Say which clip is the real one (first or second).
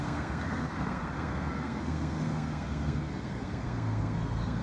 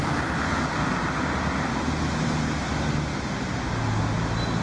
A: second